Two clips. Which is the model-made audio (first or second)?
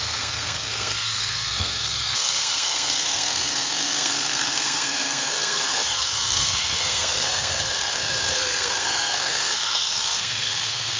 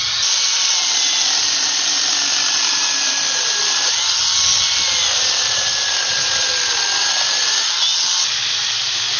first